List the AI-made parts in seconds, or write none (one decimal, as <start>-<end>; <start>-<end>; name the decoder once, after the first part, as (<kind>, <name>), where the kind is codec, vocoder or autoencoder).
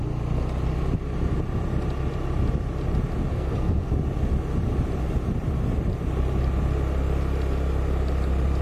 3.3-3.9 (codec, SNAC)